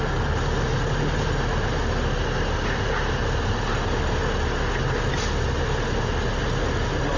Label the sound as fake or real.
real